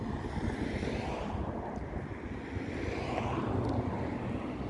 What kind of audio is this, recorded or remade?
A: recorded